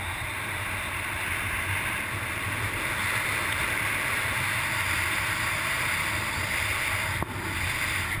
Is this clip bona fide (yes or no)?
yes